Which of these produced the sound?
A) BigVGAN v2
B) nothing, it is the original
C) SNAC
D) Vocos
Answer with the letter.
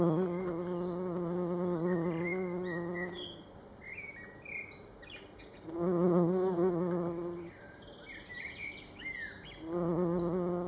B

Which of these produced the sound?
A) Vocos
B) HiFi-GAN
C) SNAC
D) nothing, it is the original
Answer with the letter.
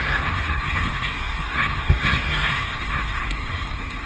C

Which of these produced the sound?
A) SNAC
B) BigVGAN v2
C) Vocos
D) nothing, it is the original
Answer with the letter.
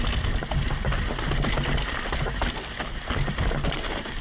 D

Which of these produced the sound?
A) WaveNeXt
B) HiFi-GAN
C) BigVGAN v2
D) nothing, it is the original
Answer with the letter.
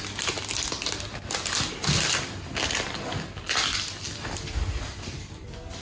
D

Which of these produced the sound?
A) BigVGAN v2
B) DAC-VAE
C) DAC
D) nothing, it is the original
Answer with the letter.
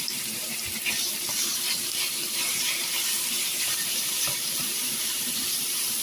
A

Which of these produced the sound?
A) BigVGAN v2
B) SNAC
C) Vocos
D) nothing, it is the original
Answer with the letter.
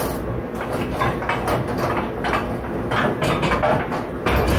D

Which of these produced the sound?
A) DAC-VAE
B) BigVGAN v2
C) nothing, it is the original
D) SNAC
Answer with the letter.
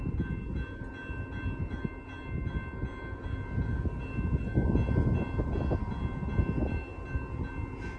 C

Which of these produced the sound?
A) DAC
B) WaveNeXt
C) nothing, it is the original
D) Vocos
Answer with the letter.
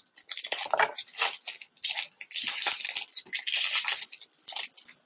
C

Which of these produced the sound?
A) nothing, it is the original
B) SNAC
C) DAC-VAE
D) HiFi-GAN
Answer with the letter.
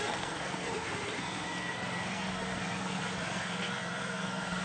B